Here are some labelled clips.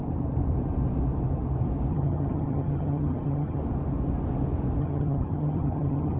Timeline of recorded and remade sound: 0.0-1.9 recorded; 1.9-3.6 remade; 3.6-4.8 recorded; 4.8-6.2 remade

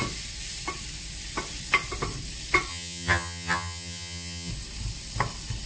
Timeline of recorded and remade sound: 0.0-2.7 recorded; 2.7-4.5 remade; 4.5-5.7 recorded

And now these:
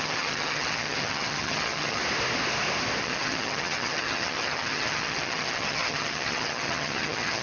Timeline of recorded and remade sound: 0.0-2.0 remade; 2.0-3.0 recorded; 3.0-7.4 remade

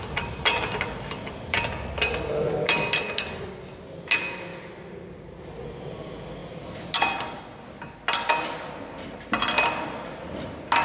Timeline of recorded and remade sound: 0.0-10.8 recorded